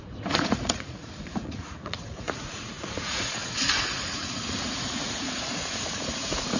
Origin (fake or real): fake